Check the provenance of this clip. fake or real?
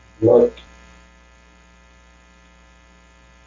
real